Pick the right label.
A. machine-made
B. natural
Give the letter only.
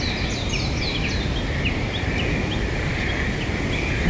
B